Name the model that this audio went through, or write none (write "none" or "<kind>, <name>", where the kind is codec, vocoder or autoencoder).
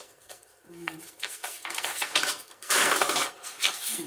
codec, SNAC